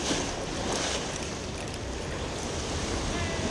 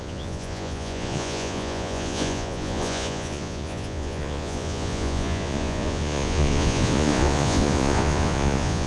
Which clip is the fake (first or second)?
second